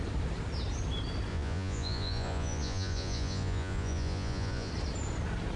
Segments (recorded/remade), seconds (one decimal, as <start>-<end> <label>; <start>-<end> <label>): 0.0-1.3 recorded; 1.3-4.7 remade; 4.7-5.6 recorded